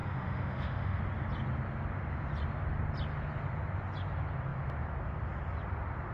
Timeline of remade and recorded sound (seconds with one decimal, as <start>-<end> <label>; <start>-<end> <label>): 0.0-1.0 remade; 1.0-6.1 recorded